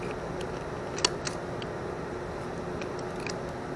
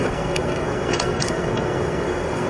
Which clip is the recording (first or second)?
first